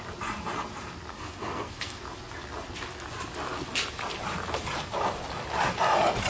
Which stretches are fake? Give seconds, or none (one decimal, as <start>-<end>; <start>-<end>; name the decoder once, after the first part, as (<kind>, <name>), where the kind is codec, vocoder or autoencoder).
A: 1.1-2.0 (codec, SNAC)